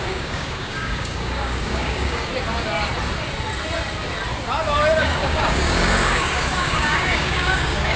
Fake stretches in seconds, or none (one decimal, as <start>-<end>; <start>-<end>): 0.0-2.3; 5.0-8.0

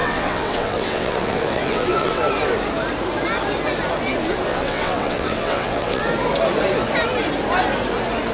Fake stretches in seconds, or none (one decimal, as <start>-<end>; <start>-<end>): 0.0-2.2; 4.5-6.0

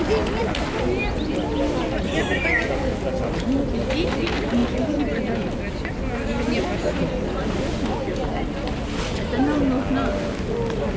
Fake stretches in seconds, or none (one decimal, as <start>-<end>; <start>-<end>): none